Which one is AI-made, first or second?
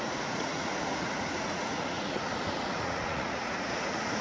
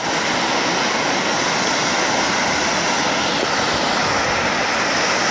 first